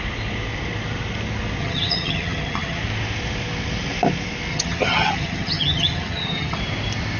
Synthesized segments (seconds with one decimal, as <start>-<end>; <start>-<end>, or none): 1.6-2.8; 4.5-6.6